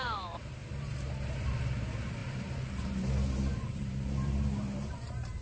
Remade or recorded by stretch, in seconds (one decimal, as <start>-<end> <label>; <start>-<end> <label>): 0.0-2.2 remade; 2.2-2.7 recorded; 2.7-5.4 remade